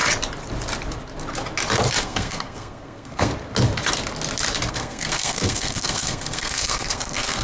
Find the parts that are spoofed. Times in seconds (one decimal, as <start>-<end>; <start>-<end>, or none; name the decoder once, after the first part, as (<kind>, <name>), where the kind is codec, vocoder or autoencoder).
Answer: 2.0-3.3 (codec, SNAC); 4.7-7.4

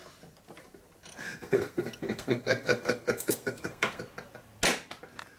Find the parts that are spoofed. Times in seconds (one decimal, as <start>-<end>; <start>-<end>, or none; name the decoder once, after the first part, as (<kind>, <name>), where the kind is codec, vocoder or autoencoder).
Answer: 1.1-4.0 (codec, SNAC)

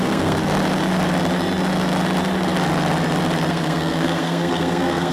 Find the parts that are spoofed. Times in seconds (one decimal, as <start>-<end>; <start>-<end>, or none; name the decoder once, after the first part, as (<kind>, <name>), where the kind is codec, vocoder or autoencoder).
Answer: 0.0-0.4 (codec, SNAC); 3.5-5.1

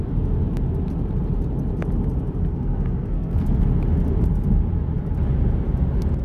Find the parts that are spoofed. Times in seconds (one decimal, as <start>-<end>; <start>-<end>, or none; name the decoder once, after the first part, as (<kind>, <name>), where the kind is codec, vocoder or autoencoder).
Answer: 2.4-3.6 (codec, SNAC)